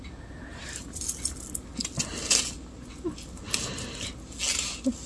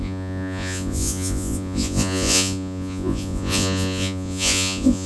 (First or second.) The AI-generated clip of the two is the second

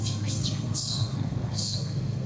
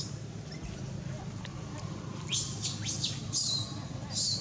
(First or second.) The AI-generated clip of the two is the first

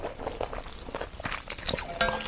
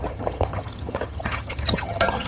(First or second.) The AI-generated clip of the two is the second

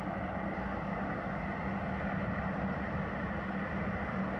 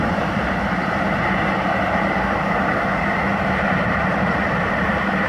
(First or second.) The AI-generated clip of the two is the second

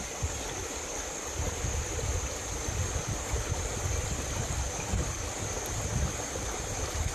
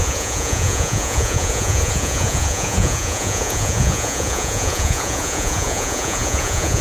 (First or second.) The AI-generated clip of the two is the second